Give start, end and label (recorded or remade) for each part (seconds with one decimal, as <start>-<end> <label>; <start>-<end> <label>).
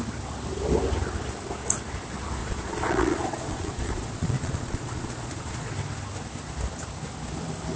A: 0.0-2.4 recorded; 2.4-5.7 remade; 5.7-7.8 recorded